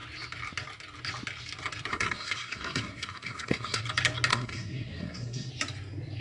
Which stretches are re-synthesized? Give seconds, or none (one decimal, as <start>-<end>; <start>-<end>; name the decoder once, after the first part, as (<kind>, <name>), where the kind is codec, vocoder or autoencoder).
1.9-3.8 (codec, SNAC); 4.3-5.5